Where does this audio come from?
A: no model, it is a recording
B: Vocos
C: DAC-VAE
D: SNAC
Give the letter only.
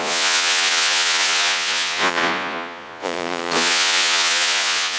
B